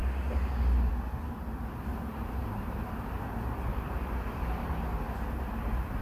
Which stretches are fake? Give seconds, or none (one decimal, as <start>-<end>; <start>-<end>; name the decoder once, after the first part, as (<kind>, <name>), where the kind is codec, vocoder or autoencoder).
1.9-2.8 (vocoder, BigVGAN v2); 3.7-6.0